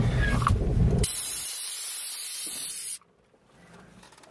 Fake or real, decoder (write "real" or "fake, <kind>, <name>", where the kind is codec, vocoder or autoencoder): real